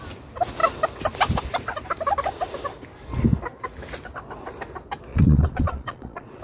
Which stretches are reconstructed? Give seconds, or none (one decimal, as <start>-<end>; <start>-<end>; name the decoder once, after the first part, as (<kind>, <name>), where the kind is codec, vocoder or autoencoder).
5.1-6.4 (vocoder, Vocos)